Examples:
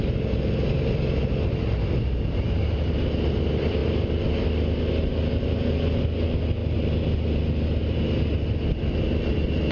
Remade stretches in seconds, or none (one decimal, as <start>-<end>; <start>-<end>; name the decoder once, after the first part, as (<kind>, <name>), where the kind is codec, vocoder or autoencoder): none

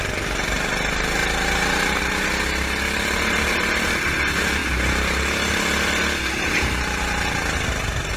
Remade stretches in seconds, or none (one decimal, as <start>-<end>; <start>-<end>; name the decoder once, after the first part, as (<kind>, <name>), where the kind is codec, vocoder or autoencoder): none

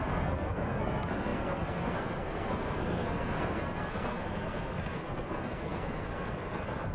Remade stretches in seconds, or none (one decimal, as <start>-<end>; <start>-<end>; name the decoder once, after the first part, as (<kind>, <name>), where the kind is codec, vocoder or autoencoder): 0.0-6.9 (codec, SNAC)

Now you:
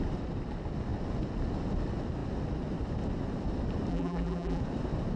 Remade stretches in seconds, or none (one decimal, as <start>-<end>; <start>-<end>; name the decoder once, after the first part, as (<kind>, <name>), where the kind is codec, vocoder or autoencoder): 3.9-4.6 (vocoder, BigVGAN v2)

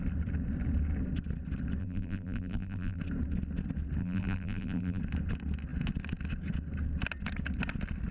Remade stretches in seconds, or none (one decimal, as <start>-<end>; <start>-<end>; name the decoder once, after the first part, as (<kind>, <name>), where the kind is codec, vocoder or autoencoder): 1.8-3.0 (vocoder, BigVGAN v2); 4.0-5.0

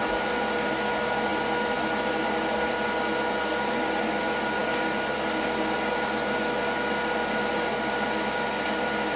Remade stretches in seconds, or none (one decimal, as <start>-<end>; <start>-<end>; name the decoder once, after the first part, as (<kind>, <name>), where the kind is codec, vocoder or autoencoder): none

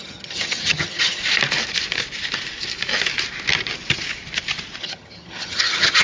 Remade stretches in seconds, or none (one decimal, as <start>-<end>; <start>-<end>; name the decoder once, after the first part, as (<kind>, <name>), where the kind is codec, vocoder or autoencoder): 0.0-1.2 (vocoder, HiFi-GAN); 4.8-6.0